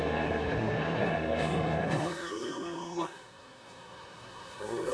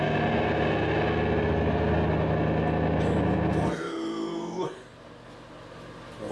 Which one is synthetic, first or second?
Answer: first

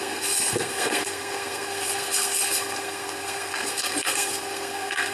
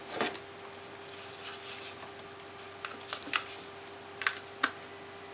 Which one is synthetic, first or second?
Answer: first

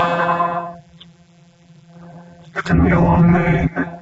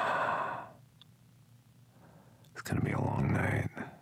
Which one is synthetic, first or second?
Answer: first